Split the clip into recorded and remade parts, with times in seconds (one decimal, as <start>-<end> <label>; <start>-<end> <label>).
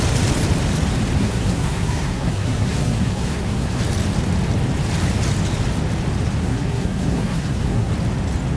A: 0.0-1.2 recorded; 1.2-3.8 remade; 3.8-6.4 recorded; 6.4-7.9 remade; 7.9-8.6 recorded